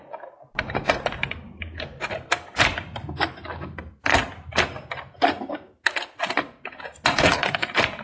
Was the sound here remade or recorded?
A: recorded